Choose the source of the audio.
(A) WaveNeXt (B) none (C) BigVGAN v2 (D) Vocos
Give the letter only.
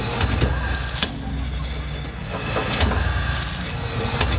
B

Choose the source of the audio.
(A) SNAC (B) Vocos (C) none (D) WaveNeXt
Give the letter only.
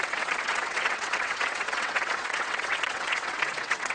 D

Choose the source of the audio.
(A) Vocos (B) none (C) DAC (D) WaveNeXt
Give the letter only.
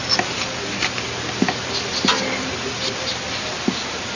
B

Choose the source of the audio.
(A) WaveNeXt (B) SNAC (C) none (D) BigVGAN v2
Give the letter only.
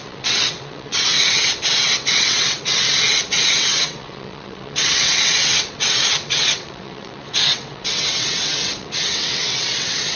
A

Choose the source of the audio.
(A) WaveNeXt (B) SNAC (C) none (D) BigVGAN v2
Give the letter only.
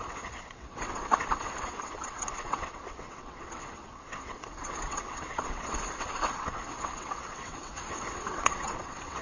A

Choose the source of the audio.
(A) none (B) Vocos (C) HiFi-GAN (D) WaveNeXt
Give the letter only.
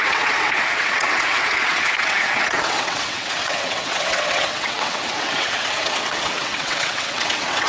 D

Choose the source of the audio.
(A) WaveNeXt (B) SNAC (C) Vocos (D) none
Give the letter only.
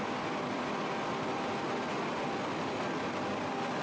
D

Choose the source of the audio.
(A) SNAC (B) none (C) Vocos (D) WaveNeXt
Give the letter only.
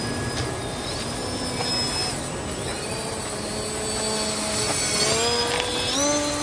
B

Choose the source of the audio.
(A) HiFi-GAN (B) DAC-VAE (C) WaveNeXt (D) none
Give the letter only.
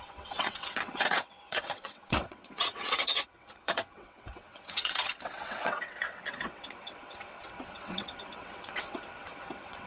C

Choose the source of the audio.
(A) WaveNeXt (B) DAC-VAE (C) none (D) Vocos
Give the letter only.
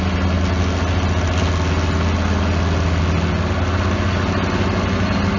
C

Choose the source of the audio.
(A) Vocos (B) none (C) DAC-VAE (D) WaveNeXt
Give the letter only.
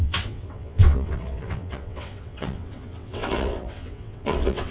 D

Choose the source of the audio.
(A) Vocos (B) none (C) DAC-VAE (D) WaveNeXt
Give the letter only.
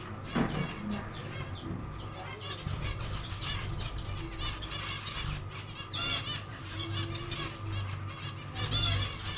B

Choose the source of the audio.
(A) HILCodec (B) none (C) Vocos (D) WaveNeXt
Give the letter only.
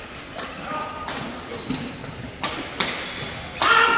B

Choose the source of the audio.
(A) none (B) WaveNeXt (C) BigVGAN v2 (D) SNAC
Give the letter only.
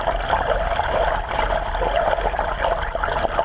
A